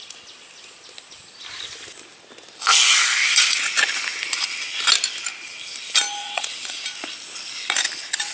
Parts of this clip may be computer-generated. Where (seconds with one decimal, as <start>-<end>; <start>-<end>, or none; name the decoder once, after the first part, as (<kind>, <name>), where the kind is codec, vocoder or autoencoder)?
6.2-6.8 (vocoder, WaveNeXt)